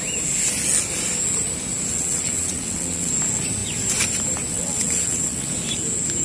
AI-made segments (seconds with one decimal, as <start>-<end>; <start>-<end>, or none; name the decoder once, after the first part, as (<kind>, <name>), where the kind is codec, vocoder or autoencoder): 1.9-3.1 (vocoder, WaveNeXt); 4.5-5.5